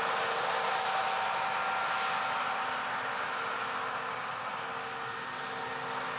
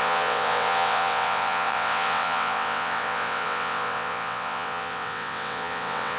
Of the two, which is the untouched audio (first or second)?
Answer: first